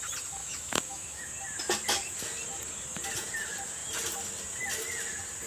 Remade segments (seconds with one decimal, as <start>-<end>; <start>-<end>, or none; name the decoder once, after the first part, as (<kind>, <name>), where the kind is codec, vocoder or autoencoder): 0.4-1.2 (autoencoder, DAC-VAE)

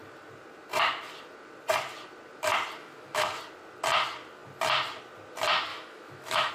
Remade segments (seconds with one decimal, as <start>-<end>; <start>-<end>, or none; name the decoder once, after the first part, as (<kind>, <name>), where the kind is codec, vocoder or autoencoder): 2.8-3.4 (autoencoder, DAC-VAE); 5.7-6.5

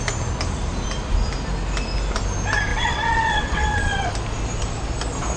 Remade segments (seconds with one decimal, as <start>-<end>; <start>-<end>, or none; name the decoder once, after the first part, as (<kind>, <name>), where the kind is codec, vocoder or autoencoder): 2.7-4.1 (vocoder, WaveNeXt)